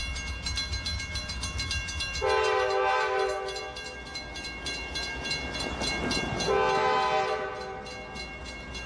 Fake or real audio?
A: real